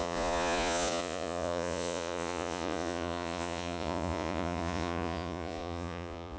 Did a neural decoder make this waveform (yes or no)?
yes